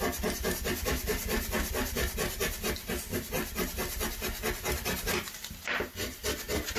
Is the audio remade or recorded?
recorded